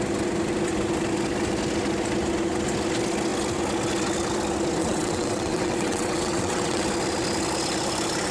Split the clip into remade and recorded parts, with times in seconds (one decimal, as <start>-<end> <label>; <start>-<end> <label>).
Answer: 0.0-4.8 recorded; 4.8-6.8 remade; 6.8-8.3 recorded